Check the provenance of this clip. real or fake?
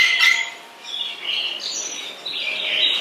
fake